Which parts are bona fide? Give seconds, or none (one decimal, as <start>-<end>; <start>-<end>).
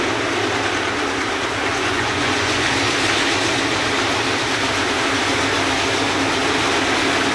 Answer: 0.0-1.7; 2.7-7.3